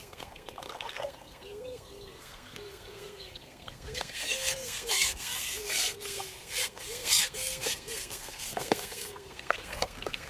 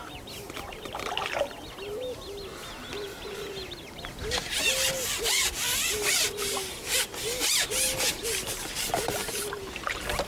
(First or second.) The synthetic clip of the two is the first